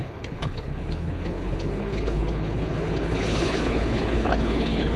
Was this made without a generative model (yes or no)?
no